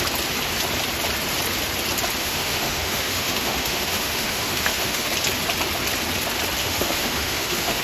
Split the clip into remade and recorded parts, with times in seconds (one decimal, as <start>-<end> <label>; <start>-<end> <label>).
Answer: 0.0-2.2 recorded; 2.2-5.1 remade; 5.1-6.6 recorded; 6.6-7.8 remade